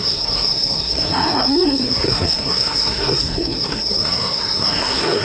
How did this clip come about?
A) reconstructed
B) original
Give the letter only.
A